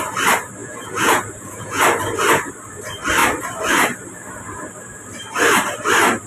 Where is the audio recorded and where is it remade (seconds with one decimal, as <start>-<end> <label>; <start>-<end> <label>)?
0.0-0.6 recorded; 0.6-1.8 remade; 1.8-6.3 recorded